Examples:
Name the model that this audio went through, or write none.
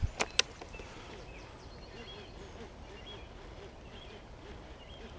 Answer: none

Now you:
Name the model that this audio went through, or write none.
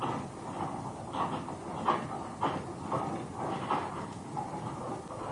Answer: none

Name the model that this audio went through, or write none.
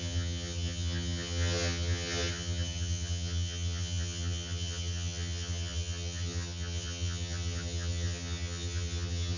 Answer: vocoder, HiFi-GAN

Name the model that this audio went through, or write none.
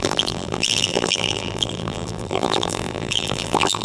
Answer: vocoder, BigVGAN v2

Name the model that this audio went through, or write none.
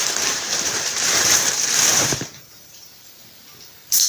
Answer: vocoder, BigVGAN v2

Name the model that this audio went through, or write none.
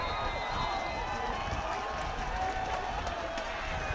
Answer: none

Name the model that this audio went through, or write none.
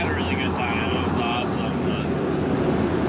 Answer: none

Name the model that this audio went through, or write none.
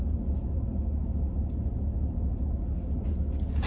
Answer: none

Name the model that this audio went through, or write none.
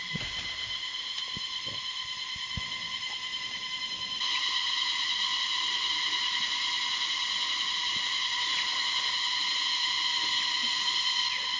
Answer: none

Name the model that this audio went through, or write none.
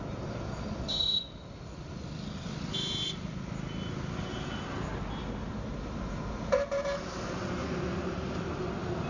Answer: none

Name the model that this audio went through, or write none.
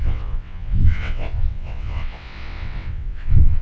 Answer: vocoder, WaveNeXt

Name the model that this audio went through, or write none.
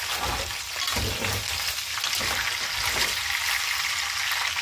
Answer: none